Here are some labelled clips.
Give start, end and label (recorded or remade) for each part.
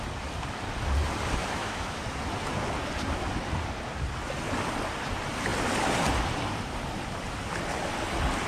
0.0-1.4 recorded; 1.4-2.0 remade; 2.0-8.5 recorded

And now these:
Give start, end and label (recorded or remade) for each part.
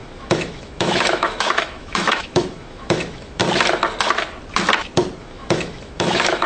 0.0-3.4 remade; 3.4-5.2 recorded; 5.2-6.5 remade